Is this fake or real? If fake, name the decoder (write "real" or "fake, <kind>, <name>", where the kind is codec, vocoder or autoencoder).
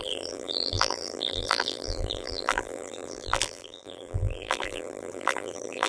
fake, vocoder, BigVGAN v2